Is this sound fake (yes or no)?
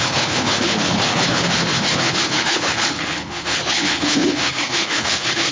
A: yes